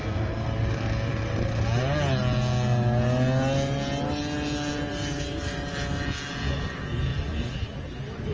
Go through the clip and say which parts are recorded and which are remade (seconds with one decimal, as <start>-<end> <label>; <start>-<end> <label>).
0.0-8.3 recorded